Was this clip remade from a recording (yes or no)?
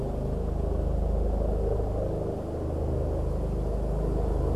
no